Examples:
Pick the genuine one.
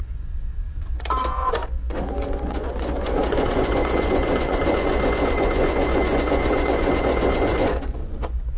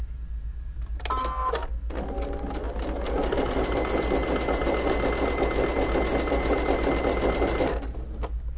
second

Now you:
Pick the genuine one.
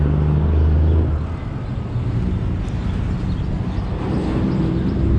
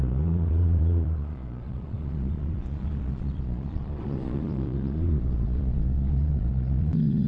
first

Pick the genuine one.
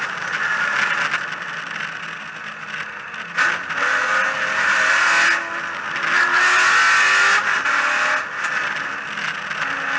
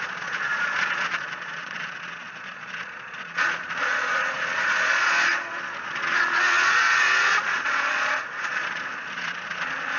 first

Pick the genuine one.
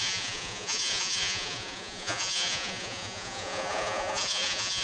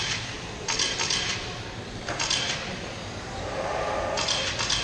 second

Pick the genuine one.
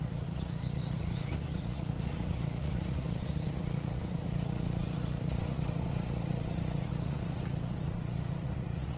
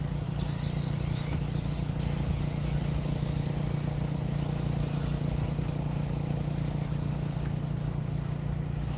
second